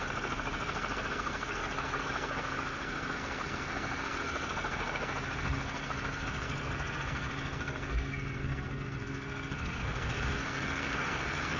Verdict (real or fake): fake